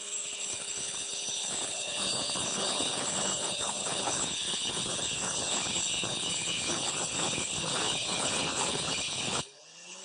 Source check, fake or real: fake